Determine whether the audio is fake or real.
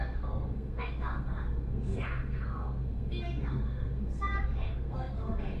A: fake